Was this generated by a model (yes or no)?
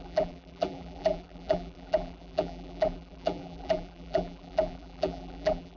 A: yes